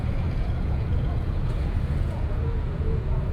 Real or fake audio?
fake